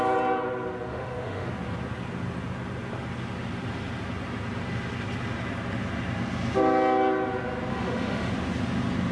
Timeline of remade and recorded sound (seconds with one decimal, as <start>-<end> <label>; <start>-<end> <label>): 0.0-0.9 recorded; 0.9-1.5 remade; 1.5-7.7 recorded; 7.7-8.3 remade; 8.3-9.1 recorded